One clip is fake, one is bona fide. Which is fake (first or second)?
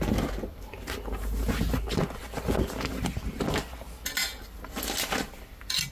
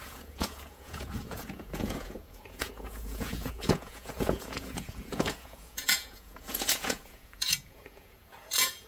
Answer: second